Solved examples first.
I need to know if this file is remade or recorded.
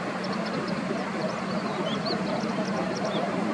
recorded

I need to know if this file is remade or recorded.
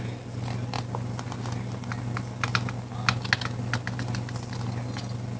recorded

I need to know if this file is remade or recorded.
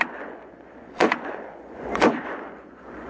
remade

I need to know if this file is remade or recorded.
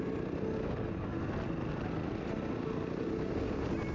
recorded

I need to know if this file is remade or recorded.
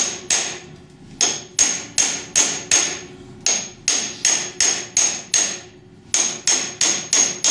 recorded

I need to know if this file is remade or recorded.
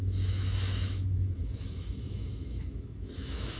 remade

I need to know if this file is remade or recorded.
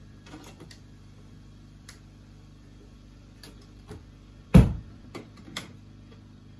remade